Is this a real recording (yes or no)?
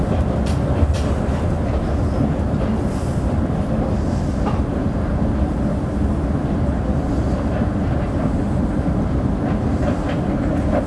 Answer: yes